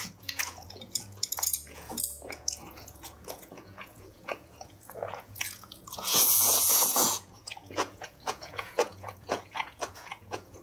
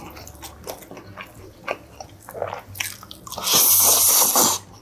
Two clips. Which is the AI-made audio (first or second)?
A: first